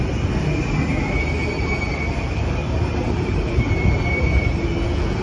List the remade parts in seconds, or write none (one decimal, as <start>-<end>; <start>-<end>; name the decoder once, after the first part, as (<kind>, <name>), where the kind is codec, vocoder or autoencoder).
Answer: 1.4-4.5 (vocoder, BigVGAN v2)